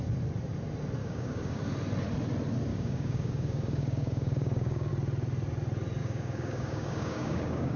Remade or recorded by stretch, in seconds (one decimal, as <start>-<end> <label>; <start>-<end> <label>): 0.0-1.0 recorded; 1.0-1.6 remade; 1.6-2.7 recorded; 2.7-4.9 remade; 4.9-6.0 recorded; 6.0-7.8 remade